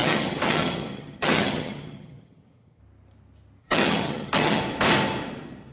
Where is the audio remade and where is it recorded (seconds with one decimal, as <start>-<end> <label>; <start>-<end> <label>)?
0.0-2.8 remade; 2.8-3.6 recorded; 3.6-4.6 remade; 4.6-5.7 recorded